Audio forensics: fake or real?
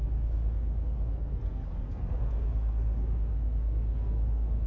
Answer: fake